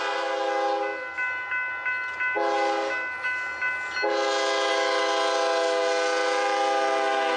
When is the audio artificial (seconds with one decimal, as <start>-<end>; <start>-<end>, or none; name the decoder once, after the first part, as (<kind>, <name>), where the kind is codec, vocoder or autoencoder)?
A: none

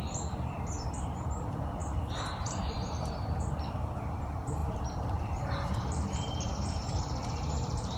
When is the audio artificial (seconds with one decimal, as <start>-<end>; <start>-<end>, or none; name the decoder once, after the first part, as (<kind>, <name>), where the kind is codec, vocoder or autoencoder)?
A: 0.0-8.0 (vocoder, BigVGAN v2)

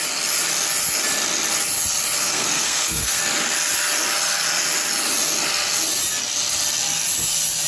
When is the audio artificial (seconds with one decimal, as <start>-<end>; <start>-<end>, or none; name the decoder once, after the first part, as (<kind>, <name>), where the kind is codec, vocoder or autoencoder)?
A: 2.2-3.2 (codec, SNAC)

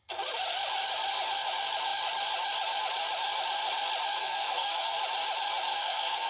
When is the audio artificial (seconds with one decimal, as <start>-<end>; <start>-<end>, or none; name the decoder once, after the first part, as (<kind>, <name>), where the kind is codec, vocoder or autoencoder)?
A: 4.2-5.0 (codec, SNAC); 5.7-6.3

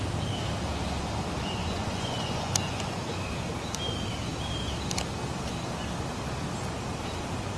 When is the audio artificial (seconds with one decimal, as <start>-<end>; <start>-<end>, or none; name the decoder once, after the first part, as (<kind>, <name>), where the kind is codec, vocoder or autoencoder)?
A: 1.6-3.0 (vocoder, Vocos)

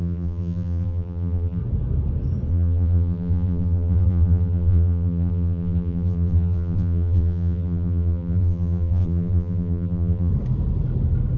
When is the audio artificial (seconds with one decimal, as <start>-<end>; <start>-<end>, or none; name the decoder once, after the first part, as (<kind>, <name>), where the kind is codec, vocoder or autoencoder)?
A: 0.0-1.6 (vocoder, BigVGAN v2); 2.5-10.3

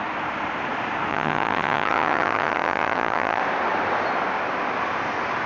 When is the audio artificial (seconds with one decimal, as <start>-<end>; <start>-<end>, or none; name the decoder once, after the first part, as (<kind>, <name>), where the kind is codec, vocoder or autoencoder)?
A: 1.1-3.4 (vocoder, HiFi-GAN)

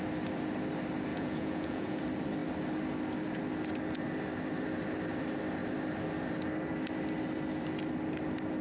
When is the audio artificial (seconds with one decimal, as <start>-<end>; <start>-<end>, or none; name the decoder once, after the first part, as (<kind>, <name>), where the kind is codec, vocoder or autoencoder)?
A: 1.1-2.0 (vocoder, Vocos)